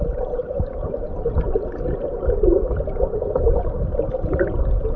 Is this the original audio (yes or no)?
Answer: yes